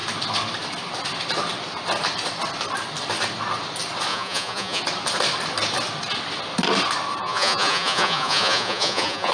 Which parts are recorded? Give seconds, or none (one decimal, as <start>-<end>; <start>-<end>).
0.0-4.1; 4.8-7.2